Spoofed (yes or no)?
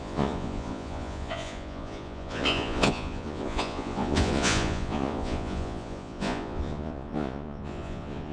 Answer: yes